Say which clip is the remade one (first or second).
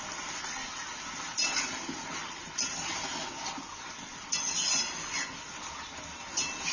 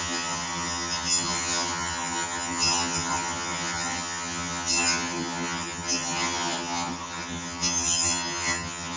second